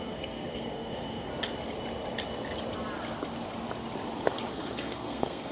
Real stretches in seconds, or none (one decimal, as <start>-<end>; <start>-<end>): 1.3-4.5